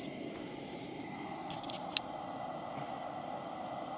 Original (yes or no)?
yes